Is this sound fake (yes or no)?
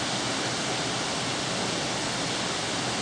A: no